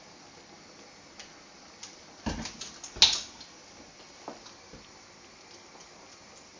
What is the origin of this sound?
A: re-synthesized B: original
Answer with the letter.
B